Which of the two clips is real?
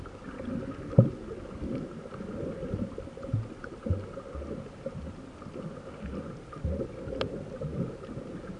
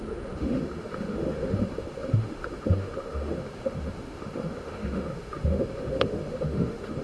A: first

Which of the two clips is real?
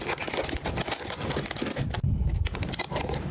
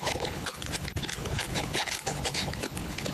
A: first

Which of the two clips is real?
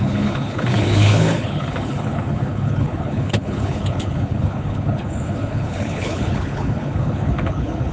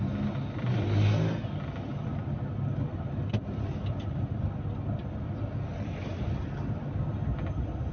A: second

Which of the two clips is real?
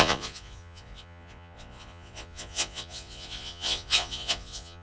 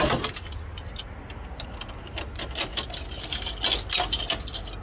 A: second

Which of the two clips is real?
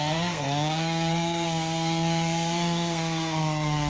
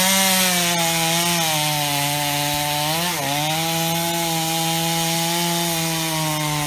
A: second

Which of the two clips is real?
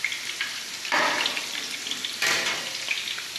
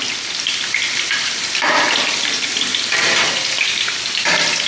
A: first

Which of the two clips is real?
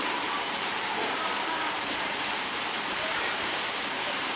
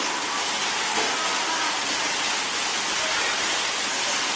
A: second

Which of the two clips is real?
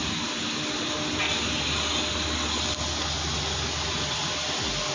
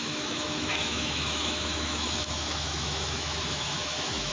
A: first